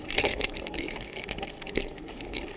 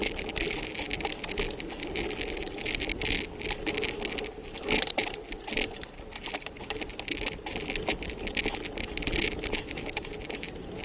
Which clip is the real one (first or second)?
second